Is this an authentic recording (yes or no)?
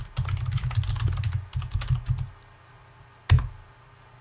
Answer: yes